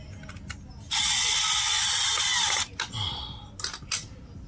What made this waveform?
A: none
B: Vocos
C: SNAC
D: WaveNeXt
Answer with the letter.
A